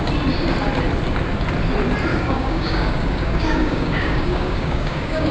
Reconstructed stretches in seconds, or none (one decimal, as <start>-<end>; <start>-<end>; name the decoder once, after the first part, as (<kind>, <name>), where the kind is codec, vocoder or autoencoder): 2.1-5.3 (codec, DAC)